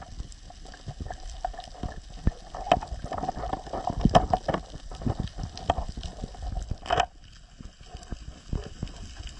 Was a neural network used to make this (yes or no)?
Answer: no